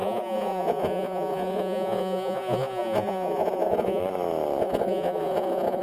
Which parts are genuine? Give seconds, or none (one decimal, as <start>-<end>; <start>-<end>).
4.0-4.6